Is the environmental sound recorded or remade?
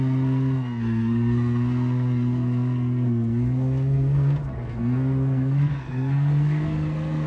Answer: remade